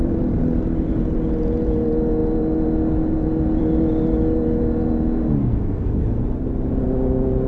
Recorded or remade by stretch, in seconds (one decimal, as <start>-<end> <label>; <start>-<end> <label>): 0.0-5.4 recorded; 5.4-6.2 remade; 6.2-7.5 recorded